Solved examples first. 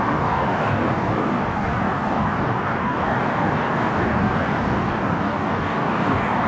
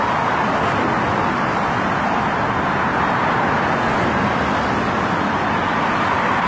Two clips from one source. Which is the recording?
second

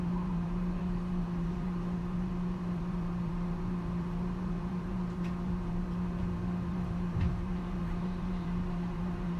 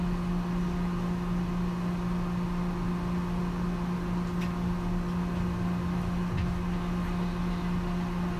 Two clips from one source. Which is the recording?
second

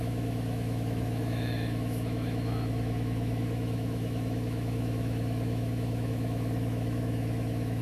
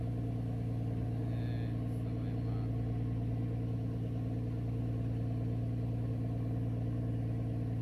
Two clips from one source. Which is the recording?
second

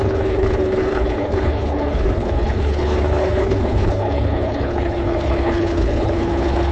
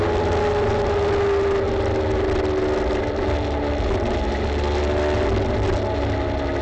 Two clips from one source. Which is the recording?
second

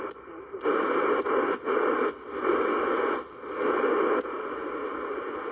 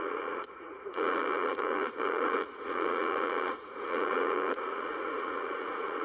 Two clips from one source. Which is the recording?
first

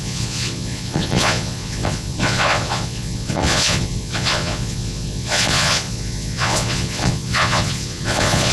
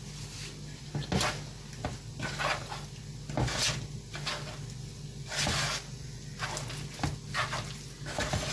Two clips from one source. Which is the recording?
second